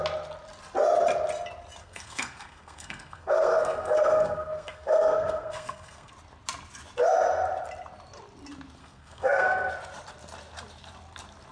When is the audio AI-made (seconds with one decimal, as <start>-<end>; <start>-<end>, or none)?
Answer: 1.8-6.1; 8.8-9.7